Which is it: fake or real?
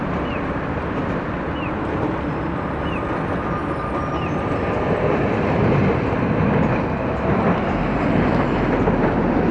real